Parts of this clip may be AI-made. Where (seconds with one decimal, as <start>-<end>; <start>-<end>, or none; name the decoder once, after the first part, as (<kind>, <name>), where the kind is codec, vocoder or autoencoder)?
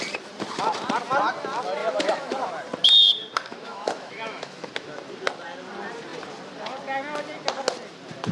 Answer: 1.8-2.5 (autoencoder, DAC-VAE); 3.5-4.7